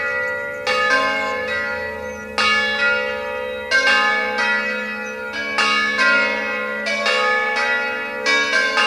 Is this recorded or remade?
recorded